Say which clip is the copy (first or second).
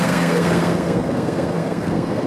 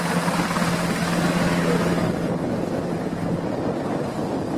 first